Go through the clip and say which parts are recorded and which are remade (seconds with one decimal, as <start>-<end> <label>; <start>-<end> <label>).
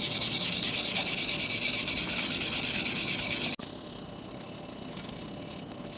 0.0-6.0 recorded